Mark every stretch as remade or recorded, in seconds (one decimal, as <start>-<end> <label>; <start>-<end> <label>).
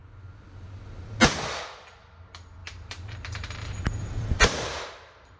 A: 0.0-2.6 recorded; 2.6-5.4 remade